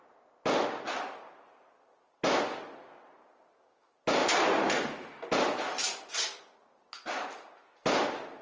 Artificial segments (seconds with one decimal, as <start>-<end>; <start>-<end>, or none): none